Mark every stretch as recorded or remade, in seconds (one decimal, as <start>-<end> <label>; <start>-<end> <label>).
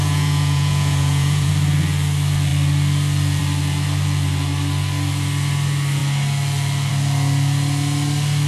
0.0-1.5 remade; 1.5-8.5 recorded